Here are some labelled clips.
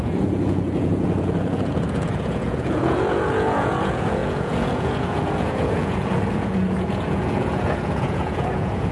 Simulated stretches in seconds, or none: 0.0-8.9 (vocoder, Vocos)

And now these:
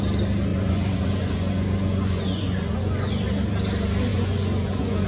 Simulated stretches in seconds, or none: 0.5-3.1 (vocoder, Vocos); 4.1-5.1

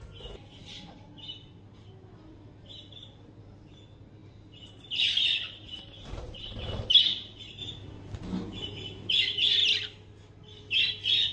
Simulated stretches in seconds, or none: none

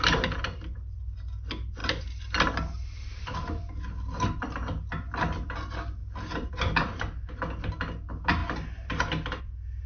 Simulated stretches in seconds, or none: none